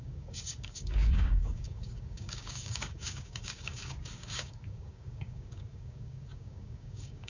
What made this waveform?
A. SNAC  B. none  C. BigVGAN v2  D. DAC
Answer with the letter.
D